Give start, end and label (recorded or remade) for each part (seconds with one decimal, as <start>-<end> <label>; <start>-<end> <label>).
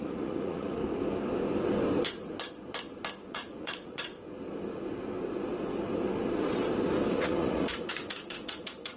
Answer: 0.0-0.8 remade; 0.8-3.3 recorded; 3.3-4.1 remade; 4.1-7.1 recorded; 7.1-9.0 remade